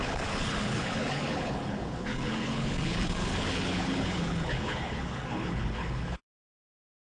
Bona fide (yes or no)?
no